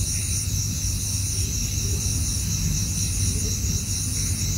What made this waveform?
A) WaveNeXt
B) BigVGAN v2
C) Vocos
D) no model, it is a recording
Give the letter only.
D